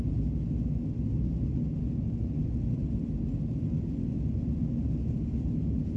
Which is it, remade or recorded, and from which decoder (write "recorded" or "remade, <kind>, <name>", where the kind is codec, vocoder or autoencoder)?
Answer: recorded